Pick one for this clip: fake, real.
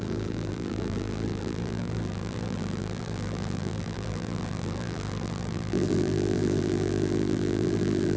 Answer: fake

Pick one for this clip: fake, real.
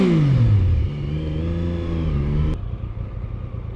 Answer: real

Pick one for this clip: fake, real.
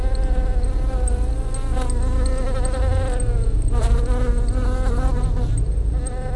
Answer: real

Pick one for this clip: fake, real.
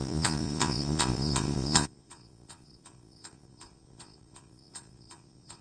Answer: fake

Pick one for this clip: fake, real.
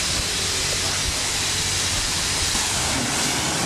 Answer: real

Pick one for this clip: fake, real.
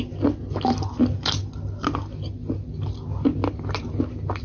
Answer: real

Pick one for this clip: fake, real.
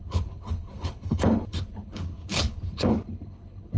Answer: fake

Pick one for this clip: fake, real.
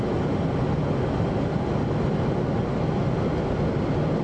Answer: real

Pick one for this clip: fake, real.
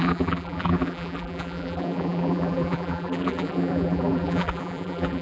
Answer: fake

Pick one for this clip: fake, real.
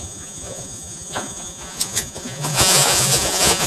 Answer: fake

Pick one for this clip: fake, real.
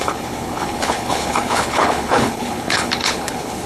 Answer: fake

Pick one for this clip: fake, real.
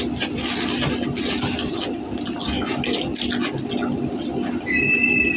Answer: real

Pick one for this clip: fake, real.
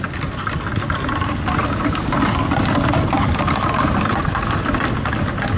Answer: real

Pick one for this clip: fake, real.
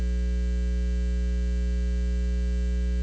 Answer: real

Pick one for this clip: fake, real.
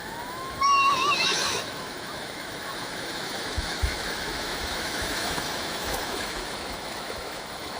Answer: fake